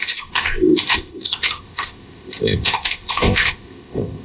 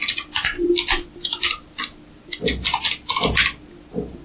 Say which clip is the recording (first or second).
second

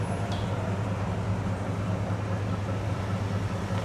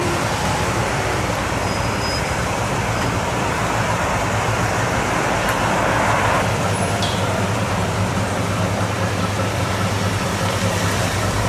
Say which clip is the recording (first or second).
first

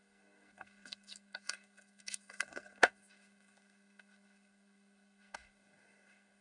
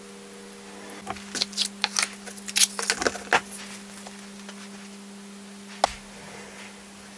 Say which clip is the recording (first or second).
second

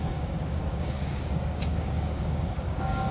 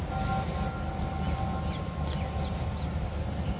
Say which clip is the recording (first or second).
second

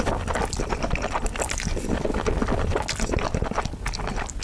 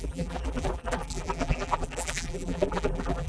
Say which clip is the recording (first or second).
first